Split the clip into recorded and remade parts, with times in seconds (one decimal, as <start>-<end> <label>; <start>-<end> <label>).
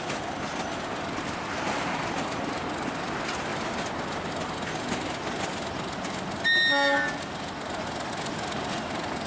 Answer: 0.0-9.3 recorded